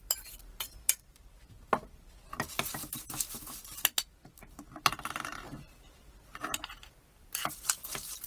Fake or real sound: fake